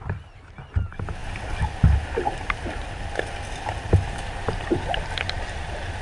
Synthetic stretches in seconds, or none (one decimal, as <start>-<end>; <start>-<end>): none